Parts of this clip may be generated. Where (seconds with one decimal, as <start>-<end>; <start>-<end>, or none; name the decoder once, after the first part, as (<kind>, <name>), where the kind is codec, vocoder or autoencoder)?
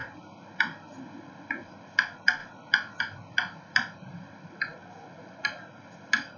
none